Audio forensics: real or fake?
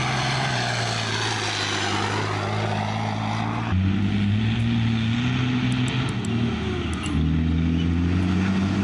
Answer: real